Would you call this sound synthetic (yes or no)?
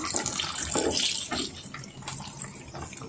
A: no